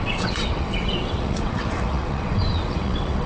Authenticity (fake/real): fake